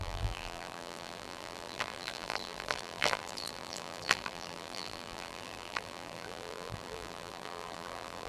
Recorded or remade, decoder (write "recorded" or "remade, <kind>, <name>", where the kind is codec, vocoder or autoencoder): remade, vocoder, BigVGAN v2